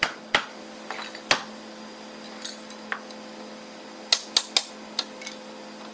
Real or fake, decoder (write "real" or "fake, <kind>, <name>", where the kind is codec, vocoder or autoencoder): real